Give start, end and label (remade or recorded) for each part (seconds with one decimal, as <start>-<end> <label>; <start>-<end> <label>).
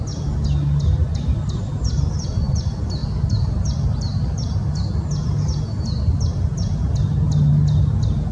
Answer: 0.0-1.8 recorded; 1.8-2.6 remade; 2.6-3.0 recorded; 3.0-4.8 remade; 4.8-8.3 recorded